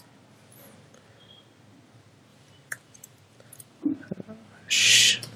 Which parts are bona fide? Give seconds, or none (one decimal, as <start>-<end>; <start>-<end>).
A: 0.0-2.3; 3.9-5.4